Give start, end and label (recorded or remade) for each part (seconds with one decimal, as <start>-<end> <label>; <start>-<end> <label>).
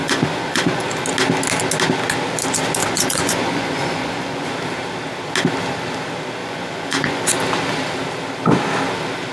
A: 0.0-0.9 remade; 0.9-2.8 recorded; 2.8-4.5 remade; 4.5-6.4 recorded; 6.4-7.2 remade; 7.2-9.3 recorded